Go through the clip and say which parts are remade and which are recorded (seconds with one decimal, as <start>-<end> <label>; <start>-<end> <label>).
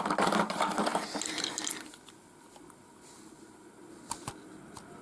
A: 0.0-5.0 recorded